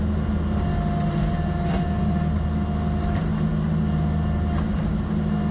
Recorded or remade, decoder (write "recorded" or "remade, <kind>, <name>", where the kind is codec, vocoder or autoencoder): recorded